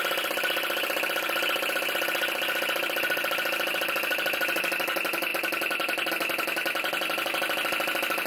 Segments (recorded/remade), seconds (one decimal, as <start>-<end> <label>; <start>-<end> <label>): 0.0-8.3 recorded